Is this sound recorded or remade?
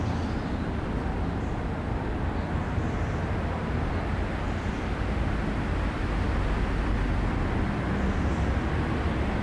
recorded